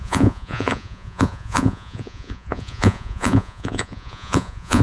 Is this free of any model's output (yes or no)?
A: no